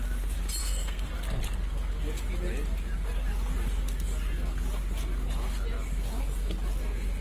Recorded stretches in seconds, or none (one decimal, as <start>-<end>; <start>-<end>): 0.0-0.6; 1.1-7.2